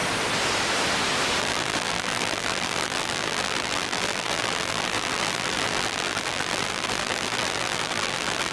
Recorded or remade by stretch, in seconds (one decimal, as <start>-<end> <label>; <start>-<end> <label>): 0.0-1.4 recorded; 1.4-8.5 remade

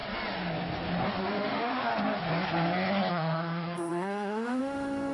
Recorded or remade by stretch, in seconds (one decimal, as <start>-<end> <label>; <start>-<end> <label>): 0.0-1.2 recorded; 1.2-1.9 remade; 1.9-3.1 recorded; 3.1-5.1 remade

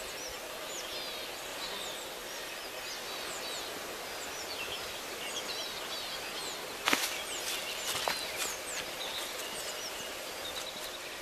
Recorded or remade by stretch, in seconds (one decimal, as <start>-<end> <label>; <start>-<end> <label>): 0.0-11.2 recorded

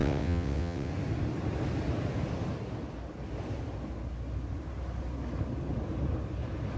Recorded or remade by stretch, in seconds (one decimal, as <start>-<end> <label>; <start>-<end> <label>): 0.0-0.9 remade; 0.9-6.8 recorded

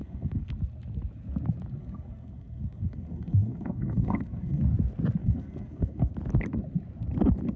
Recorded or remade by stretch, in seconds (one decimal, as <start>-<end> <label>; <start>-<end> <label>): 0.0-0.5 remade; 0.5-1.8 recorded; 1.8-4.6 remade; 4.6-5.2 recorded; 5.2-6.1 remade; 6.1-7.6 recorded

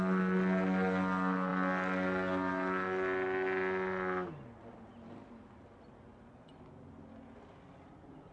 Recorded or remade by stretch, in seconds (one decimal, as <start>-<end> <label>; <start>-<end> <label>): 0.0-8.3 recorded

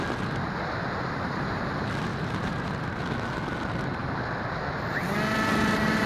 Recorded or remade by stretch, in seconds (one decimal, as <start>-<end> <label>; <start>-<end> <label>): 0.0-2.1 recorded; 2.1-3.0 remade; 3.0-6.1 recorded